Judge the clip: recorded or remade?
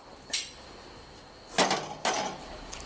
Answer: recorded